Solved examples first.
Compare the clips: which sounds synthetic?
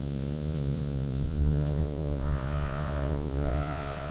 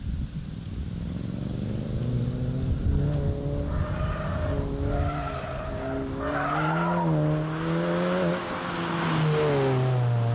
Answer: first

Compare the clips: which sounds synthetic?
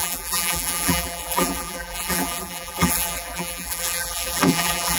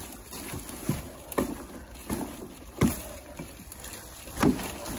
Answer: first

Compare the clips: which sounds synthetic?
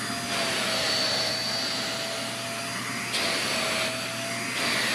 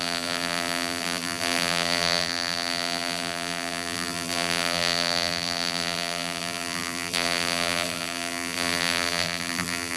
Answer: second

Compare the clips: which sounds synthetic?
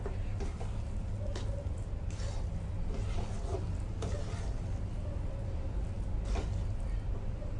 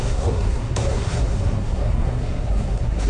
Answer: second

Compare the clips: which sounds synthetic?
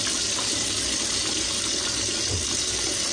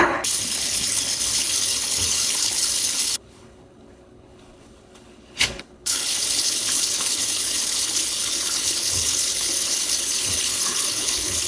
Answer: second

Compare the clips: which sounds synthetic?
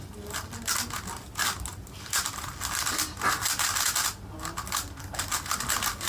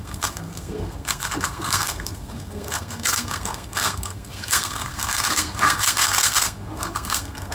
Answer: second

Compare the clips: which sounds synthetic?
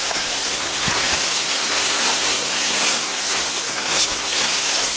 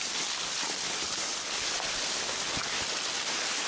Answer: first